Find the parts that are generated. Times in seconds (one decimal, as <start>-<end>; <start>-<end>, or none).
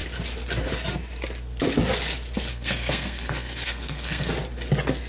2.5-4.3